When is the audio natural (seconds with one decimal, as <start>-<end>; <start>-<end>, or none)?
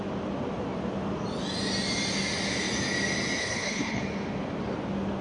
0.0-3.4; 4.0-5.2